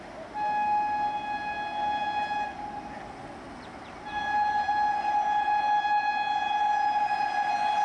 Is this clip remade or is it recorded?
recorded